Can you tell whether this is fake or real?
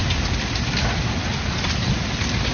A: real